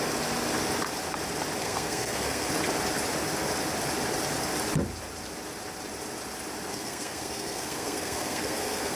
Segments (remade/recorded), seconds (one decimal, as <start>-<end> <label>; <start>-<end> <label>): 0.0-1.6 recorded; 1.6-2.5 remade; 2.5-6.7 recorded; 6.7-9.0 remade